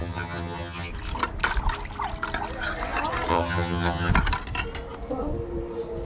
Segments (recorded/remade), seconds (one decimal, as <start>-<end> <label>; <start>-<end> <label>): 0.0-0.9 remade; 0.9-3.3 recorded; 3.3-4.1 remade; 4.1-6.0 recorded